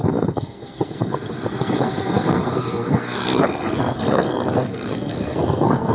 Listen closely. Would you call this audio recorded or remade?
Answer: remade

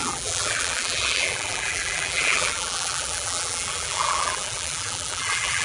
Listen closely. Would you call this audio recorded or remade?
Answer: remade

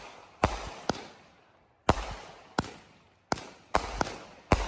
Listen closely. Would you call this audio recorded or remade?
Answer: recorded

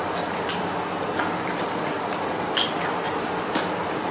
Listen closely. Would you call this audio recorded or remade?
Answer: recorded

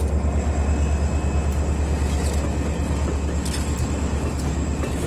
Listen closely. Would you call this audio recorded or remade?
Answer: recorded